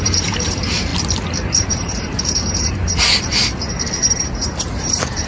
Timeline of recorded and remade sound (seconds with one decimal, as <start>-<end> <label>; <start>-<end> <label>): 0.0-0.9 remade; 0.9-1.6 recorded; 1.6-2.8 remade; 2.8-4.2 recorded; 4.2-5.3 remade